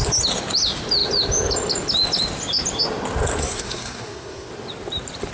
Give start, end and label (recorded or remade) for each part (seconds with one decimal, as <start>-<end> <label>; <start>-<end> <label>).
0.0-3.4 recorded; 3.4-4.5 remade; 4.5-5.3 recorded